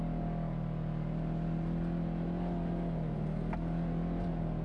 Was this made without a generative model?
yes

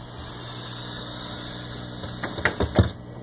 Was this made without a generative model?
yes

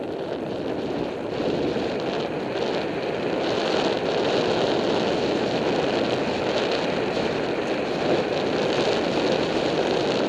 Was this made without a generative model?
yes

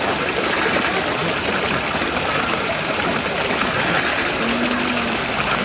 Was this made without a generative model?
yes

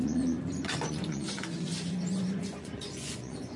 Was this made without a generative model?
no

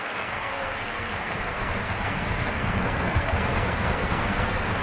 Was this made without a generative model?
no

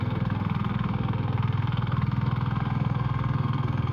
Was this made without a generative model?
no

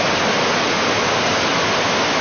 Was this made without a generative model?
yes